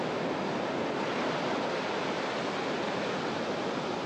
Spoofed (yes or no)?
no